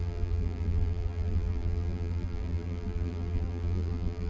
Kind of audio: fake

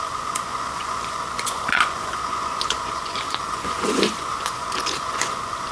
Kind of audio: fake